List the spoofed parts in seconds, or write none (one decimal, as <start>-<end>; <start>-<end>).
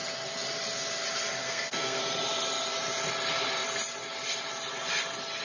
1.4-2.0